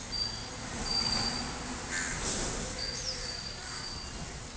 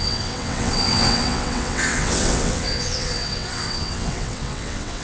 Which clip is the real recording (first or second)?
first